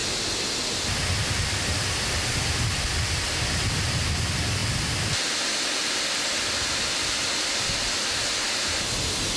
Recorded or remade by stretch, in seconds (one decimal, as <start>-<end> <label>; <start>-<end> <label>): 0.0-9.4 recorded